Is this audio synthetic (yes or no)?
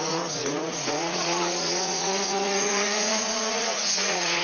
yes